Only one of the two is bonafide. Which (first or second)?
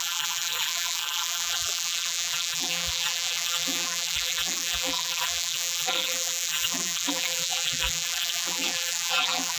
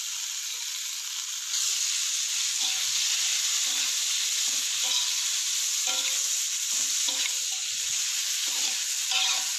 second